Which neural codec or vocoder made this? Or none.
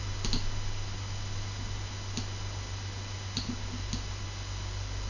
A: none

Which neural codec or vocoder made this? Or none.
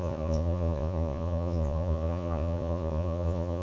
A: vocoder, Vocos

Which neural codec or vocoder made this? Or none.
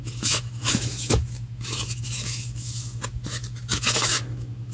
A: autoencoder, DAC-VAE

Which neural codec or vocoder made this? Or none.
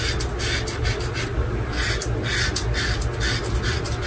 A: none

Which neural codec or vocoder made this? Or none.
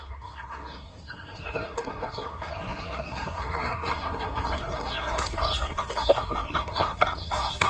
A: codec, SNAC